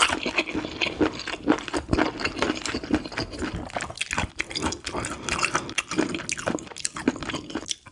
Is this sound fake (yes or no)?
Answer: no